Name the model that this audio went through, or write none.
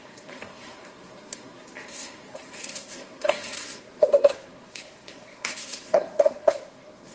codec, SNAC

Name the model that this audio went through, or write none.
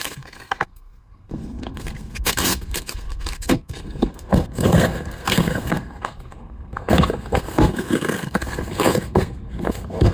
codec, SNAC